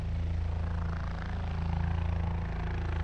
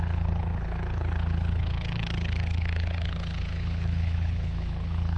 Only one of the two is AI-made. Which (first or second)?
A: second